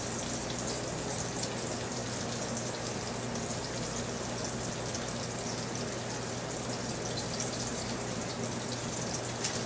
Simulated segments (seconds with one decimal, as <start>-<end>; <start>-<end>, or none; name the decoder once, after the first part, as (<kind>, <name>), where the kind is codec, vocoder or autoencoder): 7.7-8.3 (vocoder, BigVGAN v2)

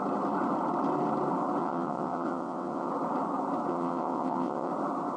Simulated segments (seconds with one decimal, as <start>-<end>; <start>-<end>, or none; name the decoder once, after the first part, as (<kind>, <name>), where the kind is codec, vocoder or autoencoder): 1.6-2.9 (vocoder, WaveNeXt); 3.7-4.7

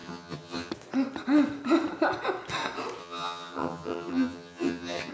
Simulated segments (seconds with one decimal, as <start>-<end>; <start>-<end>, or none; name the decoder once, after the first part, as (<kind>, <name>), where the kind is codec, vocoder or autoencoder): 0.0-0.7 (vocoder, HiFi-GAN); 3.0-5.1

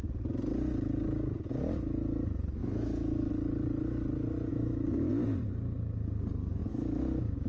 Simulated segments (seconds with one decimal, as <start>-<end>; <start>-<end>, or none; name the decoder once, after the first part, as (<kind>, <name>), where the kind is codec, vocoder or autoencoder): 2.6-3.3 (autoencoder, DAC-VAE); 4.5-5.1; 6.6-7.5

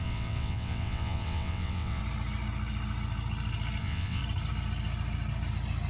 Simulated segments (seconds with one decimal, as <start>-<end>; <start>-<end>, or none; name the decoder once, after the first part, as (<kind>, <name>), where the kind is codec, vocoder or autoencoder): 0.0-2.0 (vocoder, WaveNeXt); 3.8-4.2

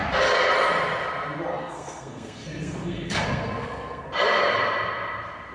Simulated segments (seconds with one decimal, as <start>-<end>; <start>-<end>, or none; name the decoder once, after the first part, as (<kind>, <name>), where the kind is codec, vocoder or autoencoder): 1.5-4.1 (codec, SNAC)

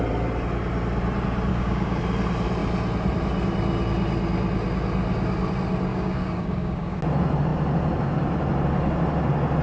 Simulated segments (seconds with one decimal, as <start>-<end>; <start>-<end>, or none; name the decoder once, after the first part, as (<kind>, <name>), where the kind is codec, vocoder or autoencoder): 1.5-2.0 (codec, DAC); 5.9-7.0